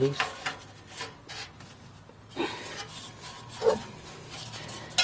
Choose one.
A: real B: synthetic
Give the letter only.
A